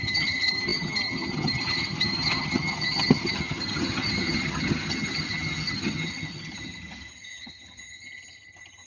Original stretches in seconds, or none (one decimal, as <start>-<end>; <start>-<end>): none